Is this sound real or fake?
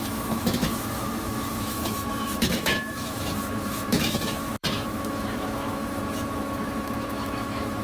fake